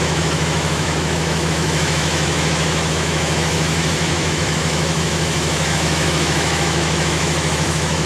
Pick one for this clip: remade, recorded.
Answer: remade